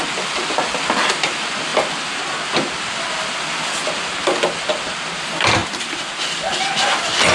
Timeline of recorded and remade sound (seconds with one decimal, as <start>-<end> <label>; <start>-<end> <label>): 0.0-7.3 recorded